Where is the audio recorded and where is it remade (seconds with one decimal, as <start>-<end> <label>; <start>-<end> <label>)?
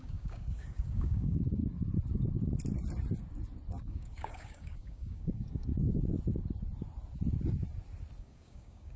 0.0-1.6 remade; 1.6-3.8 recorded; 3.8-5.7 remade; 5.7-8.2 recorded; 8.2-9.0 remade